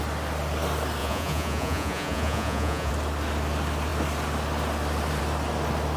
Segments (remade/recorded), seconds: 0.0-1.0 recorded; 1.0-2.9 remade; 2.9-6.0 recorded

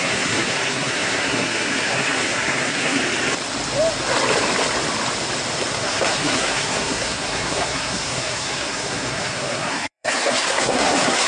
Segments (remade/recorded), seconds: 0.0-3.0 remade; 3.0-5.7 recorded; 5.7-11.3 remade

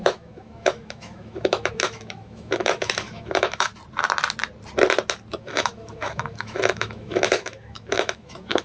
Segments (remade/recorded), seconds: 0.0-3.7 remade; 3.7-5.3 recorded; 5.3-8.6 remade

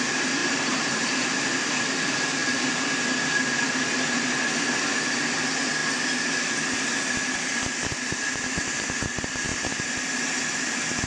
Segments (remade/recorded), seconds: 0.0-0.4 recorded; 0.4-1.7 remade; 1.7-9.5 recorded; 9.5-10.4 remade; 10.4-11.1 recorded

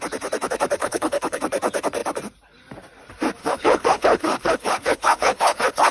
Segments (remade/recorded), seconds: 0.0-0.8 recorded; 0.8-1.4 remade; 1.4-3.4 recorded; 3.4-5.9 remade